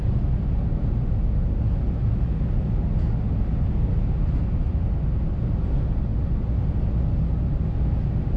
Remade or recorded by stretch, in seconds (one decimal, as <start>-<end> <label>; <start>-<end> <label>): 0.0-8.4 recorded